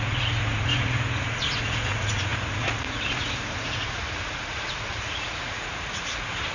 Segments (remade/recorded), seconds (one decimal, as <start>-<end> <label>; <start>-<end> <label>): 0.0-6.5 remade